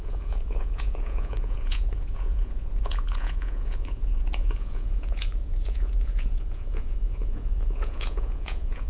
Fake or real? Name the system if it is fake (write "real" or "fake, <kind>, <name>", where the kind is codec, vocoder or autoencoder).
fake, vocoder, Vocos